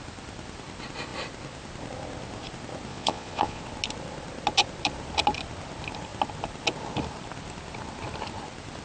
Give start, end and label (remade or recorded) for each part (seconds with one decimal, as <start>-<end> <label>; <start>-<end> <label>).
0.0-2.9 recorded; 2.9-3.6 remade; 3.6-8.8 recorded